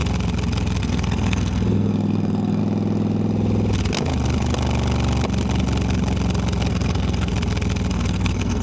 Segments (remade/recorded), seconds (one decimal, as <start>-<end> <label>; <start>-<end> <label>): 0.0-0.8 recorded; 0.8-2.6 remade; 2.6-6.7 recorded; 6.7-7.3 remade; 7.3-7.9 recorded; 7.9-8.6 remade